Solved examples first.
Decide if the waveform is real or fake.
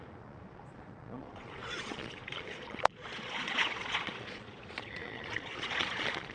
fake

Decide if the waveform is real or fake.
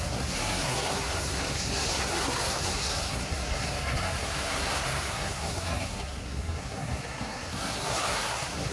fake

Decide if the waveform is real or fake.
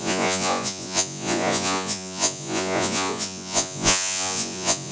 fake